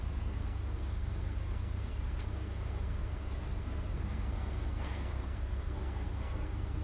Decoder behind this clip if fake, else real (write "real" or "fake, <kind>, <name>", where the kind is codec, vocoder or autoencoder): fake, codec, SNAC